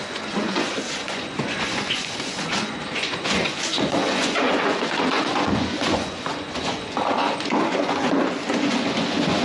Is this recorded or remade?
remade